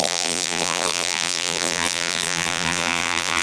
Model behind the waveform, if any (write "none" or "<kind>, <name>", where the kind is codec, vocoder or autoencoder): vocoder, BigVGAN v2